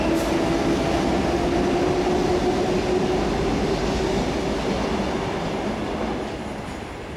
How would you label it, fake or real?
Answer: real